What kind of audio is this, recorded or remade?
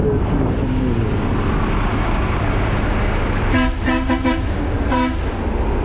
recorded